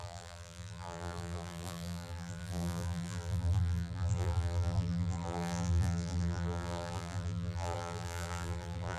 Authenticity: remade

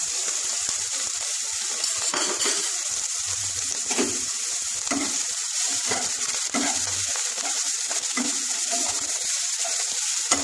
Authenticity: remade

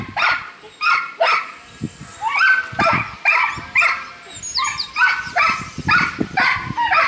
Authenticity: remade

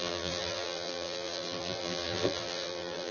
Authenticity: remade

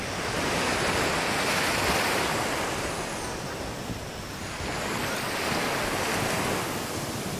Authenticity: recorded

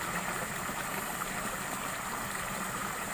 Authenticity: recorded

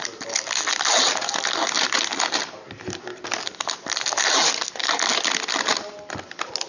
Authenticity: recorded